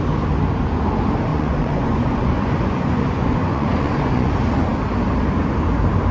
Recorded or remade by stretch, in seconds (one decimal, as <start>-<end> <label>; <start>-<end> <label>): 0.0-1.3 recorded; 1.3-4.3 remade; 4.3-6.1 recorded